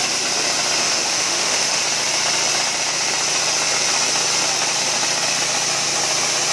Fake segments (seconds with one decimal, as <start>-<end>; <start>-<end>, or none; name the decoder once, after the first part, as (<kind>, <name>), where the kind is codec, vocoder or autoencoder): 0.8-1.8 (autoencoder, DAC-VAE)